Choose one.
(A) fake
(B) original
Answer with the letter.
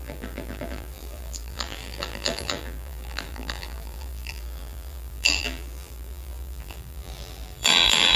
A